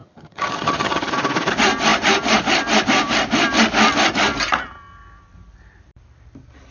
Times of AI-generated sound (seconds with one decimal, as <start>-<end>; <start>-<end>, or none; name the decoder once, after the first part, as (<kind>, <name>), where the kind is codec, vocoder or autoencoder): 0.0-1.1 (vocoder, HiFi-GAN)